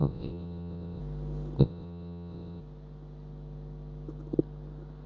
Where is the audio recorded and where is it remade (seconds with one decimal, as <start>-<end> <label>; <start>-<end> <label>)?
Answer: 0.0-1.0 remade; 1.0-1.6 recorded; 1.6-2.6 remade; 2.6-5.1 recorded